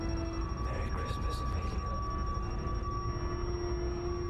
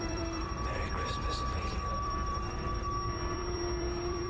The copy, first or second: second